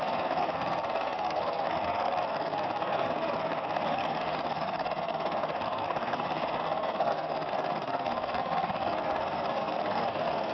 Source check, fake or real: fake